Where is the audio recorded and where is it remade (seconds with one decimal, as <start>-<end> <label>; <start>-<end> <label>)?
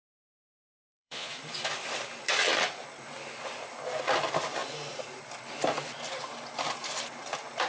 0.0-0.8 recorded; 0.8-1.3 remade; 1.3-7.7 recorded